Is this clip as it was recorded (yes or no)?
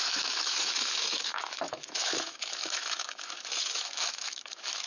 no